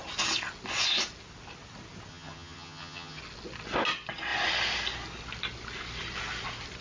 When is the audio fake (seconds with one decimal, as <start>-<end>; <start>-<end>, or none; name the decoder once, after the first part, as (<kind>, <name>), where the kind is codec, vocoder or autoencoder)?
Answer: 2.1-3.2 (vocoder, HiFi-GAN)